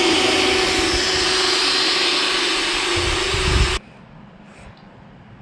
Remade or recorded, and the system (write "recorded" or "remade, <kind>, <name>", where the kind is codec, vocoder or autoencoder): recorded